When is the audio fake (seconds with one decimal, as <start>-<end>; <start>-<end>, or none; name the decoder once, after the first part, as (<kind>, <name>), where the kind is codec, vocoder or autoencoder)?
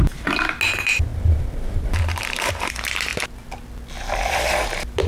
1.1-2.7 (vocoder, BigVGAN v2)